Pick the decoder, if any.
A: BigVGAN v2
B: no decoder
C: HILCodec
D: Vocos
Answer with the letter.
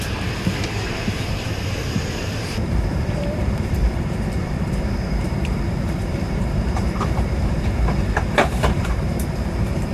A